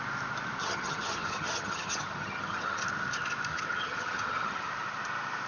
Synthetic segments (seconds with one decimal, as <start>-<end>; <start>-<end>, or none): 0.6-2.8; 3.5-4.7